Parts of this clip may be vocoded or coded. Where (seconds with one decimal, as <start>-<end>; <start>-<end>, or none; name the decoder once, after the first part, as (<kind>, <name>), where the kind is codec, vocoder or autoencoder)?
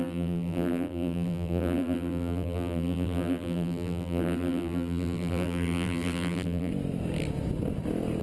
0.0-6.7 (vocoder, BigVGAN v2)